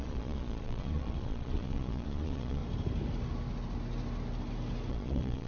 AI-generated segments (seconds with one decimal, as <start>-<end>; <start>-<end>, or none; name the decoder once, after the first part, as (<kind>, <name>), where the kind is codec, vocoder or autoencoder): 0.0-2.6 (vocoder, Vocos); 4.9-5.5